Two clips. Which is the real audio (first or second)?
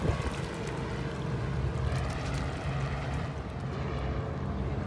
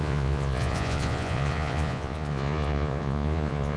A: first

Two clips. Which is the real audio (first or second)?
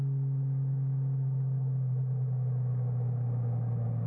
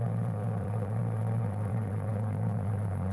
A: first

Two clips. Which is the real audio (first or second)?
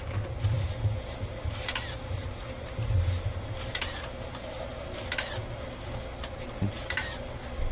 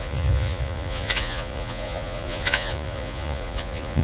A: first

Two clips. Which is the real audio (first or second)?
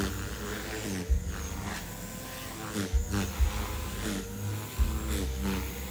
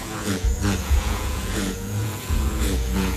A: first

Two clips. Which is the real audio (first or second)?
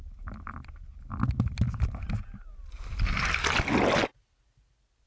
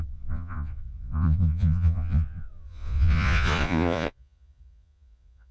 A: first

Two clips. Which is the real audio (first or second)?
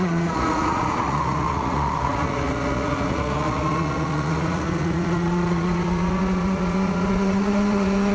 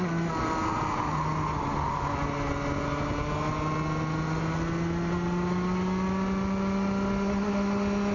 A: second